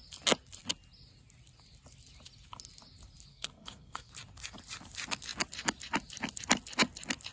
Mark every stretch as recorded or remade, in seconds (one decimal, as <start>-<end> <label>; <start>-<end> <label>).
0.0-3.3 recorded; 3.3-4.1 remade; 4.1-7.3 recorded